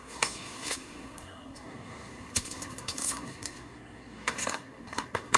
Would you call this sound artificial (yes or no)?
yes